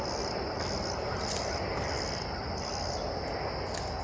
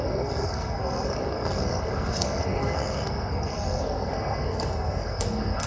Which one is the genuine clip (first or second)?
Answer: first